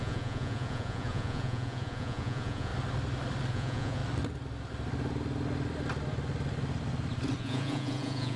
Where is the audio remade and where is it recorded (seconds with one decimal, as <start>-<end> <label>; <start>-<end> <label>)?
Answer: 0.0-2.7 remade; 2.7-3.5 recorded; 3.5-4.0 remade; 4.0-7.4 recorded; 7.4-8.4 remade